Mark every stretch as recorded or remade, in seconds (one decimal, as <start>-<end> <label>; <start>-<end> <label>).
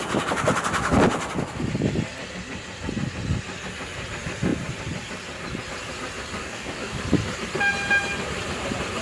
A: 0.0-6.4 recorded; 6.4-7.0 remade; 7.0-9.0 recorded